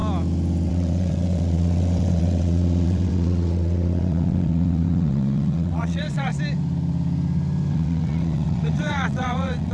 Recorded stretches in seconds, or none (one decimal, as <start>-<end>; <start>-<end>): 0.0-0.7; 6.3-7.7